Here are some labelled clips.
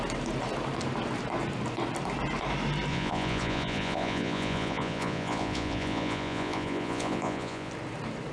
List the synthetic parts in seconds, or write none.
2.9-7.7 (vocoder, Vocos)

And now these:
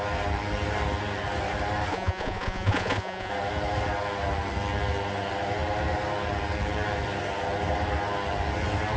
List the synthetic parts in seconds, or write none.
1.9-3.3 (vocoder, Vocos)

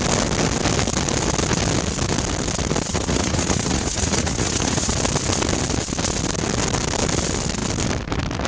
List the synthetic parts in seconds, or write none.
2.9-4.9 (vocoder, Vocos)

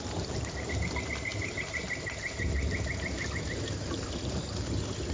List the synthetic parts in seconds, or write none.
none

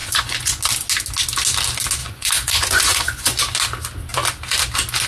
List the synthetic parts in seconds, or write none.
0.0-0.6 (vocoder, Vocos); 2.0-3.4